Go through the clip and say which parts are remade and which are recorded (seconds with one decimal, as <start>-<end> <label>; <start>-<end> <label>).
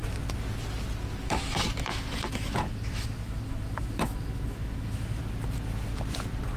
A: 0.0-1.2 recorded; 1.2-5.2 remade; 5.2-6.6 recorded